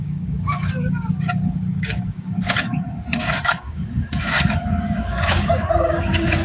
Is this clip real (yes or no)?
no